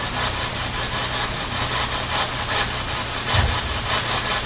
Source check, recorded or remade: remade